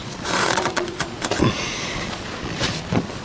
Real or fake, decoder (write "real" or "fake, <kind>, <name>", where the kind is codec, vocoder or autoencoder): fake, vocoder, Vocos